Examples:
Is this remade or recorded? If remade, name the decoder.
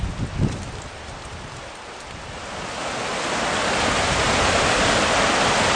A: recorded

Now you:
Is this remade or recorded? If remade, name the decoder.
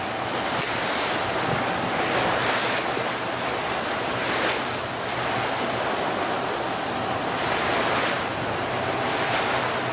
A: recorded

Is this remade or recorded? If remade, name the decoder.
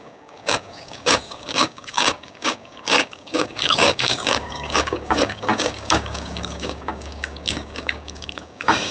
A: remade, codec, DAC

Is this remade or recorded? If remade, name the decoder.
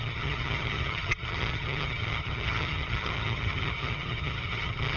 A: remade, vocoder, HiFi-GAN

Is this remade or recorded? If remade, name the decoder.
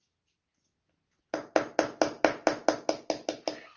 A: recorded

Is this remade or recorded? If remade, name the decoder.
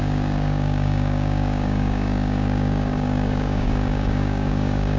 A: remade, codec, DAC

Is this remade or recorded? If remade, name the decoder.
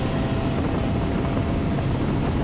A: remade, vocoder, BigVGAN v2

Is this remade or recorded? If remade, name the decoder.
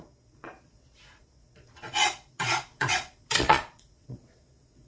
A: remade, vocoder, Vocos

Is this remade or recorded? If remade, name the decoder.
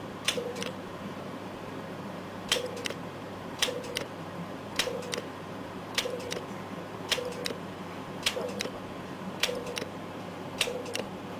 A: remade, vocoder, BigVGAN v2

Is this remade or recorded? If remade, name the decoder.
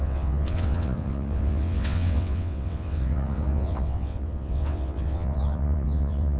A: remade, vocoder, WaveNeXt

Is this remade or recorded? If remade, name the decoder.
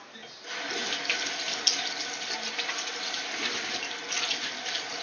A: recorded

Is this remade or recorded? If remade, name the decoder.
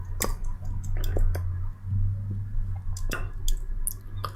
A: recorded